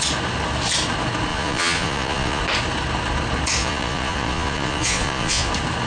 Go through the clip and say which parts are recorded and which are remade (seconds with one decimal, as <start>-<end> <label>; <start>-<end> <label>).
0.0-1.3 recorded; 1.3-2.4 remade; 2.4-3.6 recorded; 3.6-5.5 remade; 5.5-5.9 recorded